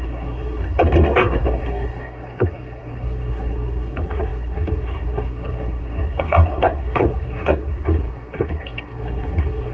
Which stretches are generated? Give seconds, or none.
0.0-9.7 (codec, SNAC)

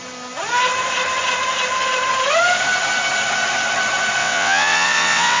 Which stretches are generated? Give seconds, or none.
4.2-5.4 (vocoder, WaveNeXt)

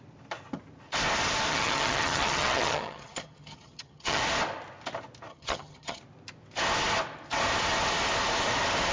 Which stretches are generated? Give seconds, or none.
1.5-4.2 (vocoder, HiFi-GAN); 5.3-6.0